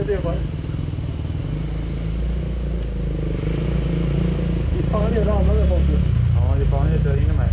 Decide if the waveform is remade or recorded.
recorded